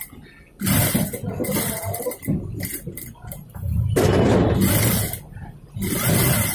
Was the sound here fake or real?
real